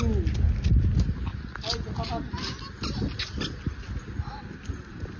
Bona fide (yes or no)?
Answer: yes